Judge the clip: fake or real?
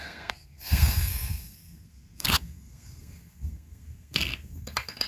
fake